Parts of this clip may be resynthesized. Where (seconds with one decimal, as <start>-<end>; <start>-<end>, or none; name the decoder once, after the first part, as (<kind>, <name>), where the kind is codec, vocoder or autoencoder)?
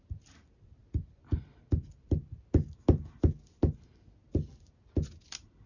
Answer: none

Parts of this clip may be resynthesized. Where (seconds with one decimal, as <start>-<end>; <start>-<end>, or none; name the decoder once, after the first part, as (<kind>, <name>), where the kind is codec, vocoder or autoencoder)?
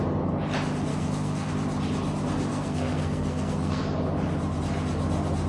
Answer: 0.9-1.5 (codec, SNAC); 2.5-3.8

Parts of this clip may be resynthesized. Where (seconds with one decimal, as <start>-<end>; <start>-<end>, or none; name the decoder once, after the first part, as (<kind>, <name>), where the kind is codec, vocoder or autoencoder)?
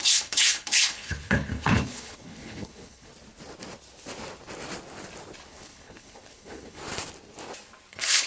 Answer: 0.0-3.1 (codec, HILCodec); 5.5-6.8; 7.9-8.3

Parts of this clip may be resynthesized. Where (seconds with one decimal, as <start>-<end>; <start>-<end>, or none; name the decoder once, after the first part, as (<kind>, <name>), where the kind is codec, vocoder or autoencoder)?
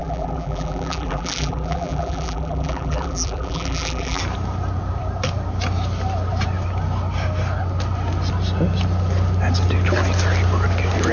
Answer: 0.0-4.2 (vocoder, BigVGAN v2)